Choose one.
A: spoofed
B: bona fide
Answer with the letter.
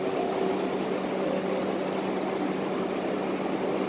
B